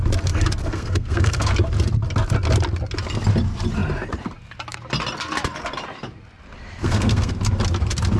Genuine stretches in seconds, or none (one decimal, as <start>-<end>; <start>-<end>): 0.0-0.6; 1.5-6.8; 7.3-8.2